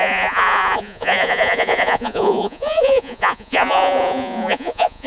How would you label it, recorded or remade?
remade